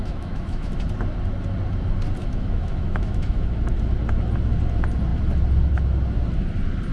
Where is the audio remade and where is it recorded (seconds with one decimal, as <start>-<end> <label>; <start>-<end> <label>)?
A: 0.0-0.7 remade; 0.7-2.2 recorded; 2.2-3.7 remade; 3.7-6.9 recorded